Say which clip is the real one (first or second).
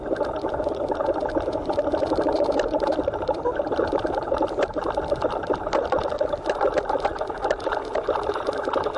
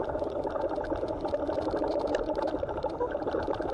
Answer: second